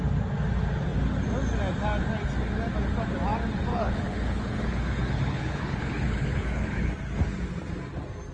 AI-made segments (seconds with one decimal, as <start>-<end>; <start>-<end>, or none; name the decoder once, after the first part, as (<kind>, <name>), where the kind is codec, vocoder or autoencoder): 3.7-6.9 (codec, HILCodec)